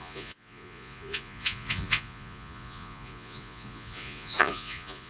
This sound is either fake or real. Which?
fake